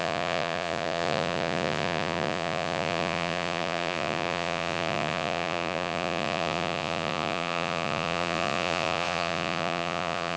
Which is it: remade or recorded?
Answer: remade